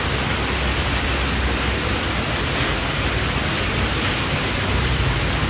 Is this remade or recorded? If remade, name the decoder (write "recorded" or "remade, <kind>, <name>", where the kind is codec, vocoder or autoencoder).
recorded